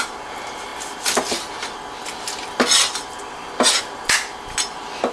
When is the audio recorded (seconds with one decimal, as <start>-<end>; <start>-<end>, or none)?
0.0-5.1